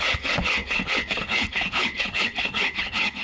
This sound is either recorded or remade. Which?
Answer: remade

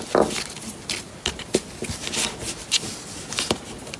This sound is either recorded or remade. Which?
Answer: recorded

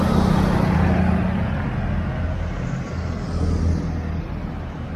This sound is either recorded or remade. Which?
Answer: recorded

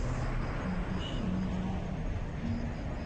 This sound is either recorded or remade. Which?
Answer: recorded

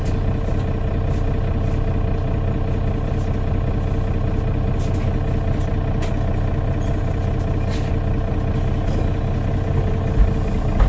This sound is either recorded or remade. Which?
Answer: recorded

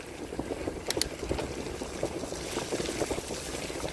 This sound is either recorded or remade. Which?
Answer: recorded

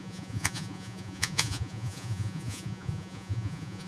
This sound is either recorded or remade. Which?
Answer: remade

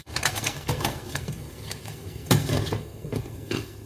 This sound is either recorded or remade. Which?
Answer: remade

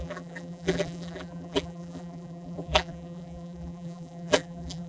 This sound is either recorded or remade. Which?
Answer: remade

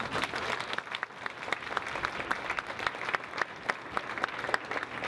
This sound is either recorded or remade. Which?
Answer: recorded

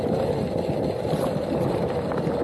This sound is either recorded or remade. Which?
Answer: recorded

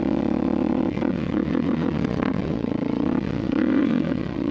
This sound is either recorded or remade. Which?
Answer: remade